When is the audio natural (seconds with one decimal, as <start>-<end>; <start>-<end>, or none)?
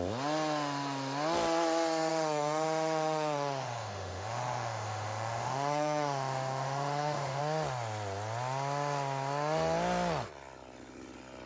0.0-2.1; 7.4-11.5